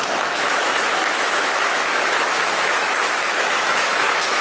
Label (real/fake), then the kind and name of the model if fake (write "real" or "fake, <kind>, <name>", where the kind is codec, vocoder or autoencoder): fake, autoencoder, DAC-VAE